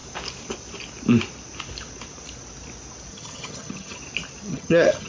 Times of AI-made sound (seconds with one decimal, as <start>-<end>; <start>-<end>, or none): 3.1-4.0; 4.5-5.1